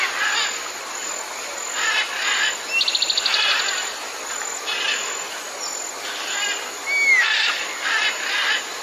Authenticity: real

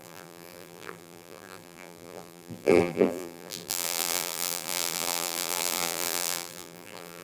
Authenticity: fake